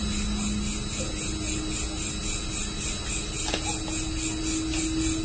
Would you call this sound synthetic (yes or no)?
no